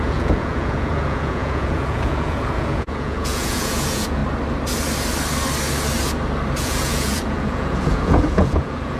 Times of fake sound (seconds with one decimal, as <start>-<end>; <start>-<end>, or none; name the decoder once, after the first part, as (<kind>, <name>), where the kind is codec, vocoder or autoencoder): 0.0-4.2 (vocoder, Vocos); 6.6-9.0